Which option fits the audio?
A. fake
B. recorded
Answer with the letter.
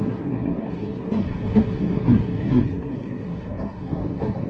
A